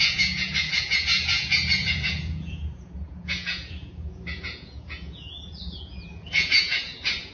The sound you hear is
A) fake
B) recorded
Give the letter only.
A